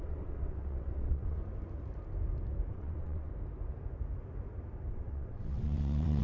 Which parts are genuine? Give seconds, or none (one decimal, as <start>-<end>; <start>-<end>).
1.4-2.7; 3.3-4.9